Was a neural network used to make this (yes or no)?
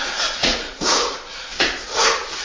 yes